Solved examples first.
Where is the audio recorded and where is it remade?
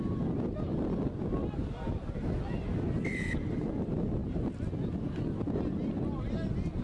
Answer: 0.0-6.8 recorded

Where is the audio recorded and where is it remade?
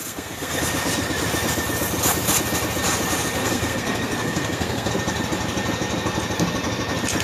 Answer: 0.0-0.6 remade; 0.6-3.4 recorded; 3.4-4.9 remade; 4.9-7.2 recorded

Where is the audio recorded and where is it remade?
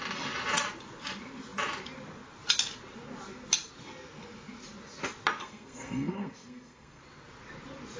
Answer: 0.0-5.4 recorded; 5.4-7.0 remade; 7.0-8.0 recorded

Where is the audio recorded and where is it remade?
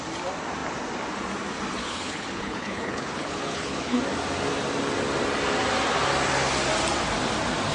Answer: 0.0-1.8 recorded; 1.8-4.0 remade; 4.0-7.7 recorded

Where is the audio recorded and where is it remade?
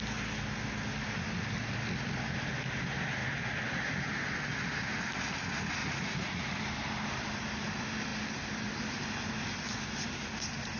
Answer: 0.0-5.8 recorded; 5.8-6.6 remade; 6.6-10.8 recorded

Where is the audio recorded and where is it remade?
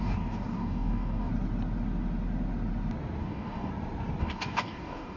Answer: 0.0-1.3 remade; 1.3-3.2 recorded; 3.2-3.7 remade; 3.7-4.2 recorded; 4.2-5.2 remade